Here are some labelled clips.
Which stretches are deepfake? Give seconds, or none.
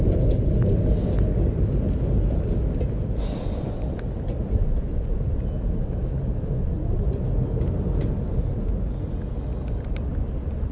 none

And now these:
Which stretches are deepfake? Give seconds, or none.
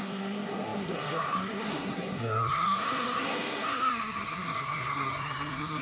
0.0-5.8 (codec, SNAC)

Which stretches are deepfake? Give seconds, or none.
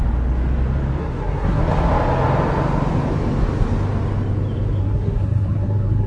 1.0-1.6 (codec, SNAC); 4.8-6.1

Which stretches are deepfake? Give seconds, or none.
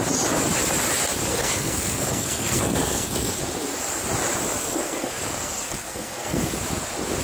1.3-3.4 (codec, SNAC); 4.6-6.5